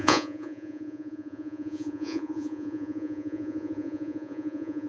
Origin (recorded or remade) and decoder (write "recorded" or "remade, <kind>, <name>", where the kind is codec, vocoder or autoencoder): remade, vocoder, Vocos